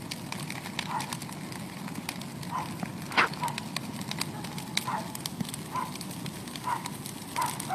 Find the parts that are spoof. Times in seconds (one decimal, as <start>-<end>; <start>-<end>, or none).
none